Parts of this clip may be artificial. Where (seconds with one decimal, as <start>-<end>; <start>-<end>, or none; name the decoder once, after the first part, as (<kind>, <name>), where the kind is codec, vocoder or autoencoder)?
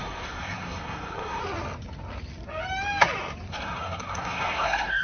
0.0-1.4 (codec, SNAC); 3.5-5.0